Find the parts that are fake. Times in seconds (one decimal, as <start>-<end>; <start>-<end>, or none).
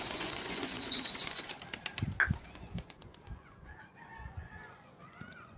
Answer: 0.0-1.5; 2.4-5.6